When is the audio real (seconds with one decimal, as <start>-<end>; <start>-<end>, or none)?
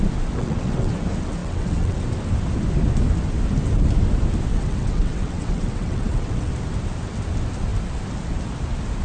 0.0-0.4; 0.9-1.4; 2.0-4.5; 6.5-9.0